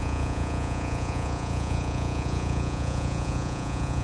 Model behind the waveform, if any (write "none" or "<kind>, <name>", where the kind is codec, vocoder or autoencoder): vocoder, Vocos